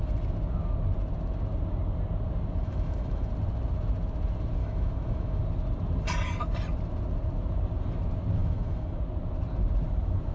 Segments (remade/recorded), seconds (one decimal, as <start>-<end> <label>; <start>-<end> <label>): 0.0-2.6 recorded; 2.6-3.3 remade; 3.3-4.6 recorded; 4.6-5.4 remade; 5.4-8.4 recorded; 8.4-9.0 remade; 9.0-10.3 recorded